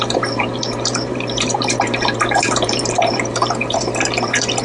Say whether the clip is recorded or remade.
remade